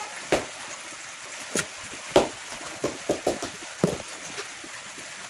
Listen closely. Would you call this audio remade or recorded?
recorded